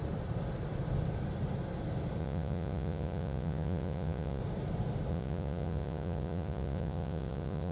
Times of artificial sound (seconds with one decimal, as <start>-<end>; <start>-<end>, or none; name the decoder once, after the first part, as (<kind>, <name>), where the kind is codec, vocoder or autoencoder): 2.2-4.4 (vocoder, Vocos); 5.1-7.7